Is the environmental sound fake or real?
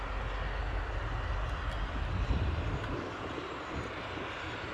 real